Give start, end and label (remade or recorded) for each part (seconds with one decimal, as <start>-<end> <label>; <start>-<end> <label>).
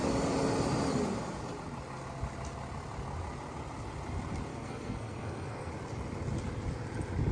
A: 0.0-4.5 recorded; 4.5-5.7 remade; 5.7-7.3 recorded